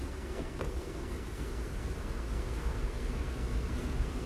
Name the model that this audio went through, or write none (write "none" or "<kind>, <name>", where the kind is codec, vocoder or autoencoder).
codec, SNAC